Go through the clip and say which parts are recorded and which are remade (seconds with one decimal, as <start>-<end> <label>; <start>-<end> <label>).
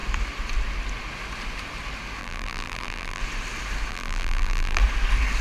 0.0-2.2 recorded; 2.2-3.2 remade; 3.2-3.9 recorded; 3.9-4.8 remade; 4.8-5.4 recorded